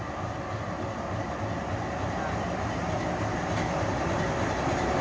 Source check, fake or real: real